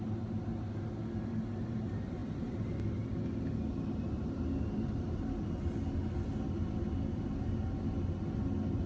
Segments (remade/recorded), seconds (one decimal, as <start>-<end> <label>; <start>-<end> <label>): 0.0-8.9 recorded